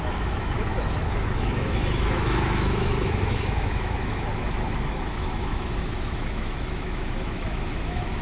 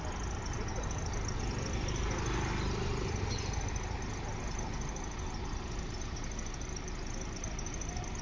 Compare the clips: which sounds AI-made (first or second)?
first